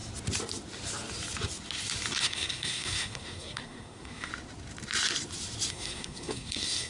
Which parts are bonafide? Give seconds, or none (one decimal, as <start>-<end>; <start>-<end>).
0.0-2.2; 4.3-5.7

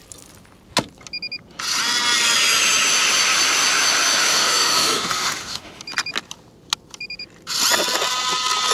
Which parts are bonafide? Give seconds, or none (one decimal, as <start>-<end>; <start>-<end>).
0.0-4.2; 5.8-8.7

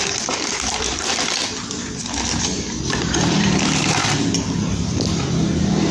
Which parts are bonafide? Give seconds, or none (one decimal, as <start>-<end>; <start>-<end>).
1.8-3.0; 4.0-5.9

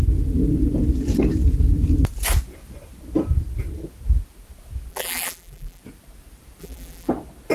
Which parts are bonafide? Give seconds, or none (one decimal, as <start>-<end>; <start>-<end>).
0.0-4.9; 5.8-6.6; 7.1-7.5

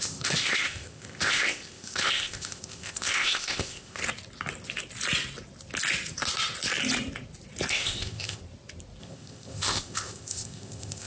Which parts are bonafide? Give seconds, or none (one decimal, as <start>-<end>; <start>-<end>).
4.0-7.7; 8.4-9.0